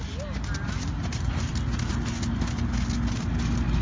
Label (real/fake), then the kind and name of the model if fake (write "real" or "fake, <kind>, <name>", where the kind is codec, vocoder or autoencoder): real